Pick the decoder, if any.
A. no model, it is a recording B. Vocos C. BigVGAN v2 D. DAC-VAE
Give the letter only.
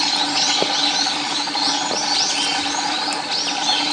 A